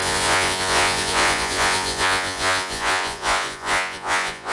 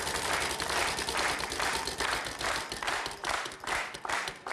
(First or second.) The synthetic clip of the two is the first